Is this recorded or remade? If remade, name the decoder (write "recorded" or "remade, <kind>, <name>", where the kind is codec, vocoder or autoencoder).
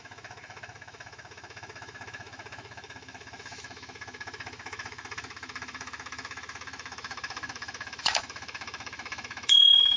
remade, autoencoder, DAC-VAE